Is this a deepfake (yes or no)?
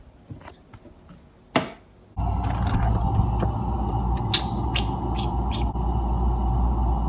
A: no